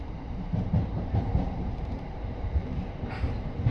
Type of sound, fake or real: fake